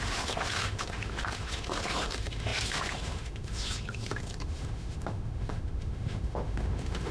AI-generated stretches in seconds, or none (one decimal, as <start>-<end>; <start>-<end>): 0.0-7.1